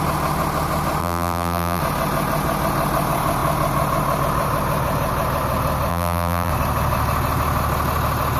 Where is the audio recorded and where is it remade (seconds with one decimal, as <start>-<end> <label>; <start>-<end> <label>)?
0.0-1.0 recorded; 1.0-1.8 remade; 1.8-5.9 recorded; 5.9-6.5 remade; 6.5-8.4 recorded